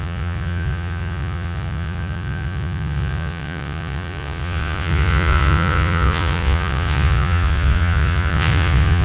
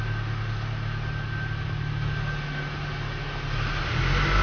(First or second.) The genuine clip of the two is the second